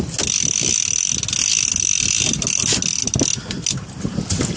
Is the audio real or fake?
real